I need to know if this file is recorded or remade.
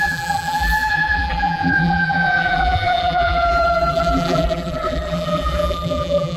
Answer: remade